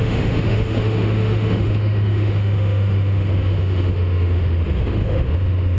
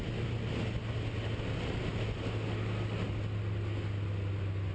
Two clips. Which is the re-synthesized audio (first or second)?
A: first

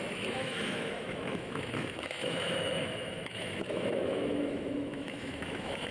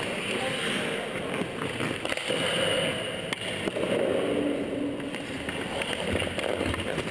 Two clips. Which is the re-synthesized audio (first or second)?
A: first